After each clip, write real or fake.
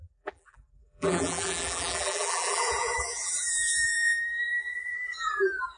fake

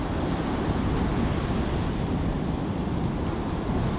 real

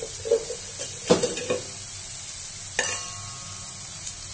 real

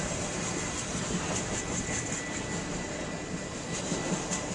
real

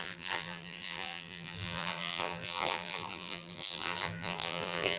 fake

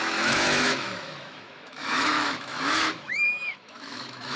fake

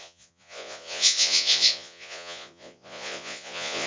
fake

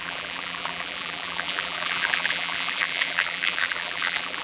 fake